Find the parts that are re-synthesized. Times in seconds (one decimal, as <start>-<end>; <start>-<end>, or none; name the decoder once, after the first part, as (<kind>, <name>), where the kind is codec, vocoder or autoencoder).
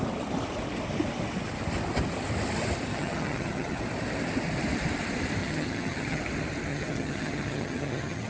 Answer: 2.9-3.8 (vocoder, HiFi-GAN); 5.4-6.2; 6.7-8.3